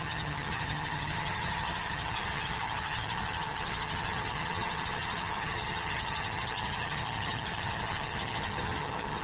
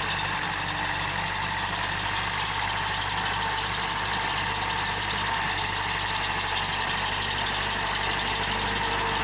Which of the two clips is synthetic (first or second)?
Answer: first